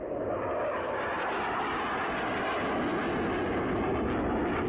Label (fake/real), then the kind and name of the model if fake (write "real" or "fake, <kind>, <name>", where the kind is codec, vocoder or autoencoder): real